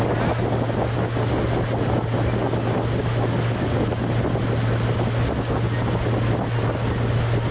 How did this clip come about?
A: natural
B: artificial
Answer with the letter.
A